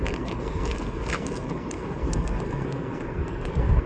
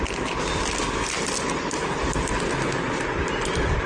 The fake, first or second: first